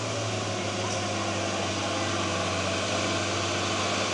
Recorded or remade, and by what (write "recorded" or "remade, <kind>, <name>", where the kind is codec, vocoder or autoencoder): recorded